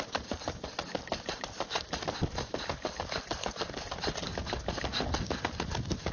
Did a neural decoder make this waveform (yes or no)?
no